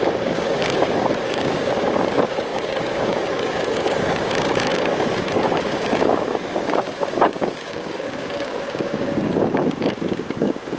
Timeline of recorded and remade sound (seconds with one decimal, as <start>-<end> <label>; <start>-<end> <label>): 0.0-10.8 remade